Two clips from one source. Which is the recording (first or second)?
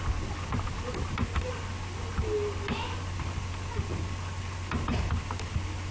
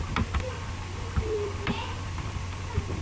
first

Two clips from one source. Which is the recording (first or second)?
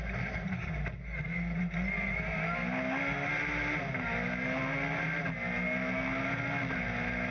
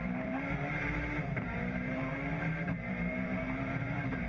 first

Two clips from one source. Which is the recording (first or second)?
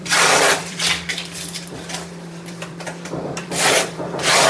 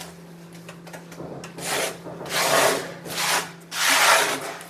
second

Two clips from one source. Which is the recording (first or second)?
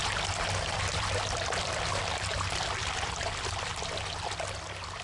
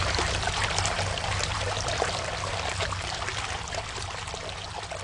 first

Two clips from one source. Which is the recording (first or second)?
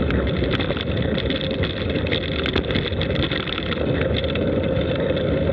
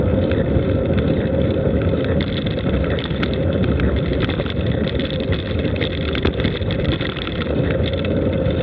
first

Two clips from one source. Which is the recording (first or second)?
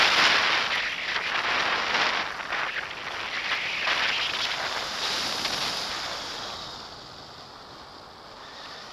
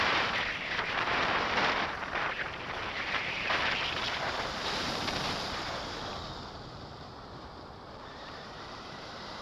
first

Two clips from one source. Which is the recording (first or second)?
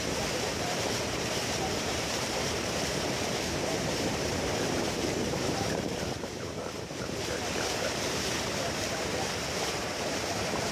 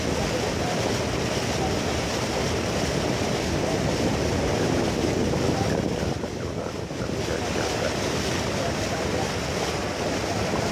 second